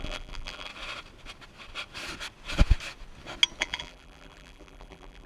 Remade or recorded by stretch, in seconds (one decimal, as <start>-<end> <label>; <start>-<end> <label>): 0.0-0.7 remade; 0.7-3.6 recorded; 3.6-5.3 remade